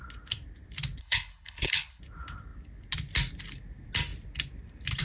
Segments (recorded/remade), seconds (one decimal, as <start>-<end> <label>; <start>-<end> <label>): 0.0-1.0 recorded; 1.0-2.0 remade; 2.0-5.0 recorded